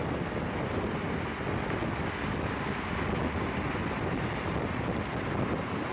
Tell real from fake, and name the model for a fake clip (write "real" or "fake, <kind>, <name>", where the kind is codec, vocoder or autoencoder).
real